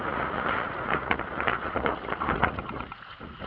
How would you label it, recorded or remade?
remade